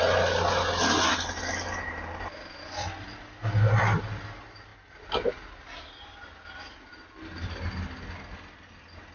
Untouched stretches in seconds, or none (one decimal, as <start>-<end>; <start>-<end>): 0.0-9.1